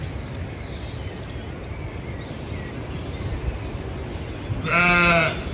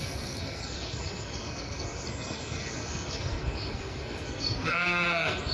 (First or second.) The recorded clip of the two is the first